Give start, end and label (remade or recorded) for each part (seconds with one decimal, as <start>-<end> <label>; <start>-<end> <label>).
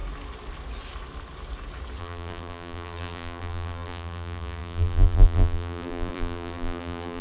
0.0-2.0 recorded; 2.0-7.2 remade